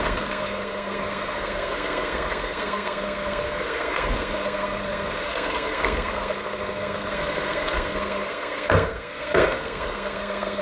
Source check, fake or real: fake